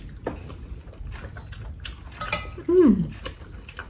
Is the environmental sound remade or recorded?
recorded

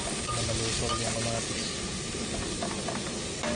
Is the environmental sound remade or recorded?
recorded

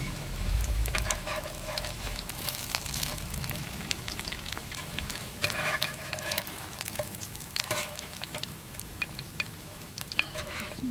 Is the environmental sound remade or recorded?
remade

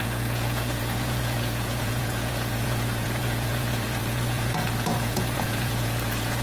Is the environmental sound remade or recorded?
remade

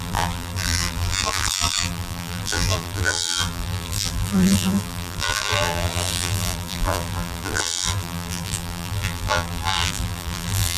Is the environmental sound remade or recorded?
remade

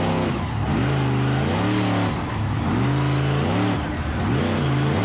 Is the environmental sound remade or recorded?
recorded